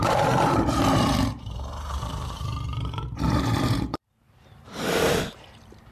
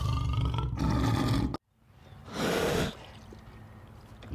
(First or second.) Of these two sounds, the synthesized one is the first